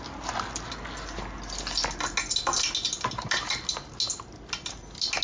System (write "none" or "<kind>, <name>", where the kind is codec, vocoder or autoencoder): none